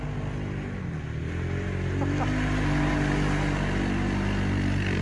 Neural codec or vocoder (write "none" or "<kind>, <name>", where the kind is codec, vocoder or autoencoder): none